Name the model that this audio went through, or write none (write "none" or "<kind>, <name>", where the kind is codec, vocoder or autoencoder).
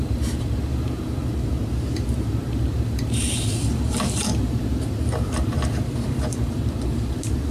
vocoder, BigVGAN v2